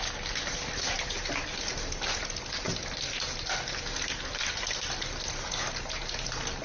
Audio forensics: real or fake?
real